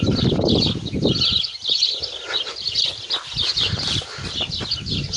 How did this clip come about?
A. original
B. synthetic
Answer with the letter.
A